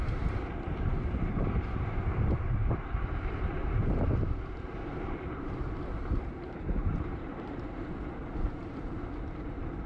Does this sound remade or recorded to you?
remade